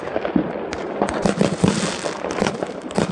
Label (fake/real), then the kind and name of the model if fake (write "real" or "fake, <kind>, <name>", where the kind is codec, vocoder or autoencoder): real